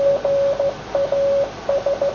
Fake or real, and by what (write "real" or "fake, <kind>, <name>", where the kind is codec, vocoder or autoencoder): real